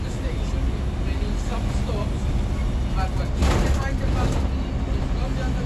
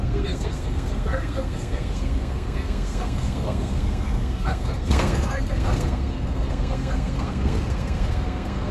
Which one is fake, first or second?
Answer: second